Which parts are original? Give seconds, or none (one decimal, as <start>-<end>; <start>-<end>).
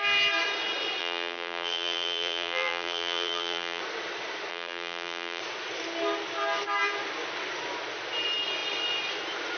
0.0-1.0; 3.8-4.5; 5.4-9.6